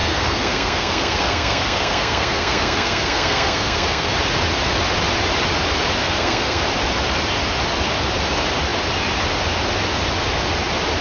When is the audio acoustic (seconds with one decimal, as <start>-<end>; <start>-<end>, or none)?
4.1-6.0; 6.6-11.0

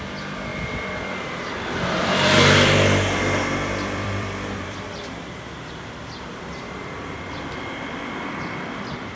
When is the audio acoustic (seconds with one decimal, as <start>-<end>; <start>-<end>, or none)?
none

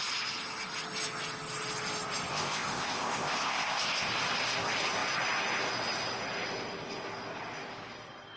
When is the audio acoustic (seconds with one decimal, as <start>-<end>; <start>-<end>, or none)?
0.0-2.3; 4.1-8.4

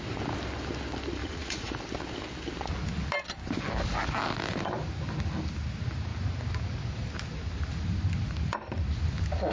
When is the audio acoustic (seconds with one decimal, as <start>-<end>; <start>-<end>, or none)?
0.0-1.2; 1.7-9.5

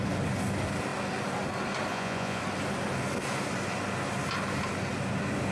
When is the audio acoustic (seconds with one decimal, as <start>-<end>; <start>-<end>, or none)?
0.0-1.9; 2.4-5.5

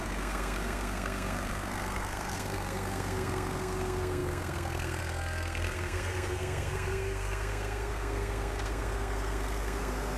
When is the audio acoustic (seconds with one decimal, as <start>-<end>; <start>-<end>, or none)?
none

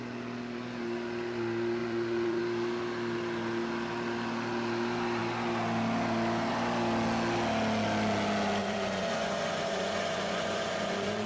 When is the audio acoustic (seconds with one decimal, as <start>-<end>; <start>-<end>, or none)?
0.0-1.8; 2.4-8.6

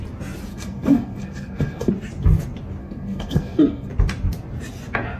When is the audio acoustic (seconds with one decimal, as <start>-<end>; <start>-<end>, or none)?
0.0-0.5; 1.9-2.8; 3.9-5.2